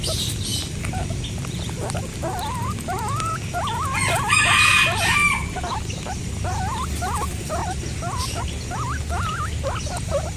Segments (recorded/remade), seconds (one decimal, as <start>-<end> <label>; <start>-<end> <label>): 0.0-0.5 recorded; 0.5-2.0 remade; 2.0-7.6 recorded; 7.6-8.4 remade; 8.4-10.4 recorded